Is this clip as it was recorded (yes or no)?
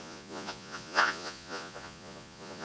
no